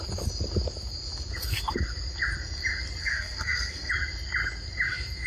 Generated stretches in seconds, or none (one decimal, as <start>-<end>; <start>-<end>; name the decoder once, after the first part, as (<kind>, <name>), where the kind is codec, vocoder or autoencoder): 3.0-3.9 (codec, SNAC)